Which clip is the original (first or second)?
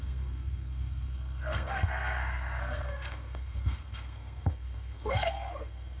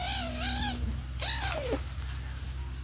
second